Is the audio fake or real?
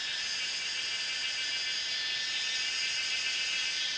real